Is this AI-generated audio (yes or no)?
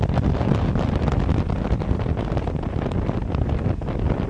no